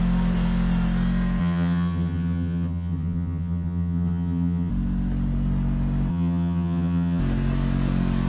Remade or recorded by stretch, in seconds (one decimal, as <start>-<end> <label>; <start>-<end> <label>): 0.0-1.4 recorded; 1.4-4.7 remade; 4.7-6.1 recorded; 6.1-7.2 remade; 7.2-8.3 recorded